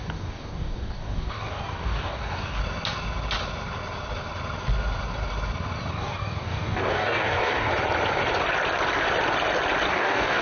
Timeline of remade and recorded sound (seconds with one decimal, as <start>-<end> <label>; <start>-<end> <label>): 0.0-2.6 remade; 2.6-5.9 recorded; 5.9-7.7 remade; 7.7-9.9 recorded; 9.9-10.4 remade